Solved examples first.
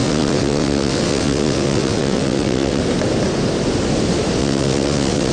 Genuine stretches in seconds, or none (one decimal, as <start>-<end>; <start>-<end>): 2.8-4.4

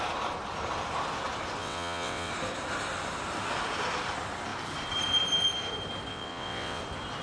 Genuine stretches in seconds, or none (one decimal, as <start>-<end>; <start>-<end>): 0.0-1.6; 2.3-6.1; 6.8-7.2

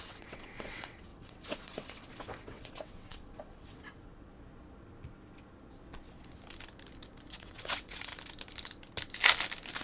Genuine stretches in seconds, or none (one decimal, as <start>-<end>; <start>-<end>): 4.3-7.3; 8.1-9.8